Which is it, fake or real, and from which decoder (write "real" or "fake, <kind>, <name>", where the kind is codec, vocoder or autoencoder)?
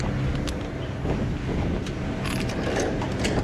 real